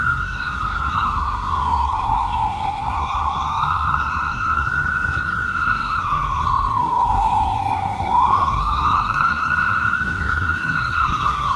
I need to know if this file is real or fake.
fake